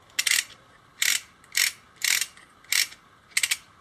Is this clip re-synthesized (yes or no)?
no